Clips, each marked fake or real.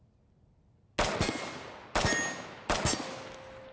real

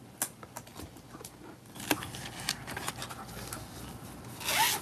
real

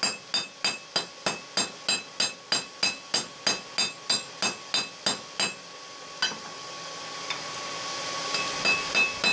real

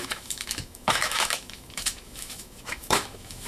fake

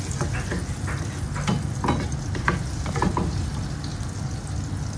real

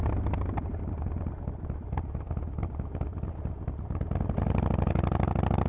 real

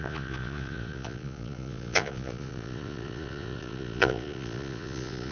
fake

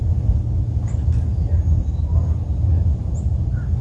real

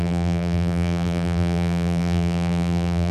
fake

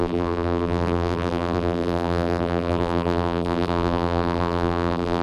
fake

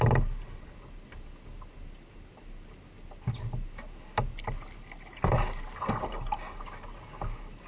real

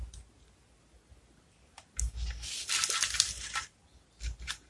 real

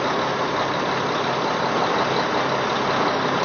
real